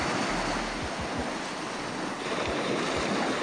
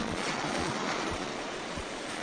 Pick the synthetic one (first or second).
second